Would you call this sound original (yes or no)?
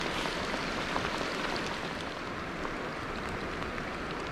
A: no